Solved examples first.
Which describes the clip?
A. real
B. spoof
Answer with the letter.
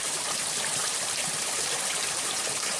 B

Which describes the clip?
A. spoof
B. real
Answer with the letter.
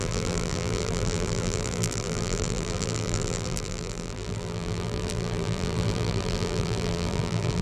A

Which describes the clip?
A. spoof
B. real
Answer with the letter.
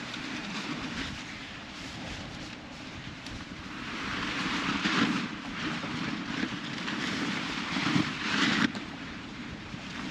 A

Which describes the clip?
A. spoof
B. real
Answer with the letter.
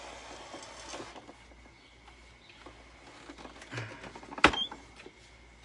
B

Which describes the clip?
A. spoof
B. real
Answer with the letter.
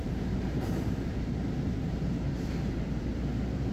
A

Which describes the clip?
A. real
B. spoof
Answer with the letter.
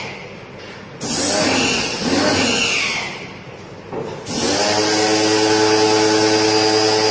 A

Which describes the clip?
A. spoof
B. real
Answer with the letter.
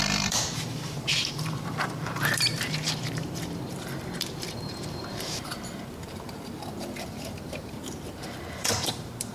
A